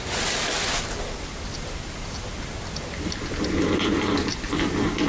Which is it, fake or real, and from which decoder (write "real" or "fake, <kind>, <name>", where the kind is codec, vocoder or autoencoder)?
real